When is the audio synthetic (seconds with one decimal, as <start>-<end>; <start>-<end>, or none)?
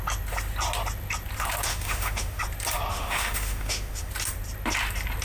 1.7-2.4; 2.9-4.1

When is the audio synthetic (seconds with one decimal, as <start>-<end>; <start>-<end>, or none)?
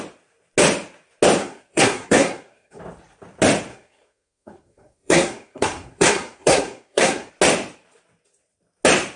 1.4-2.8; 3.7-7.3